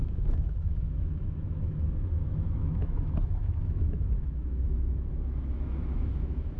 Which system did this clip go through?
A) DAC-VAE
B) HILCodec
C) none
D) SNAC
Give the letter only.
A